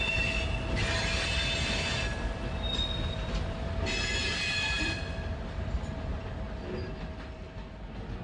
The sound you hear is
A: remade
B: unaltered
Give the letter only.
B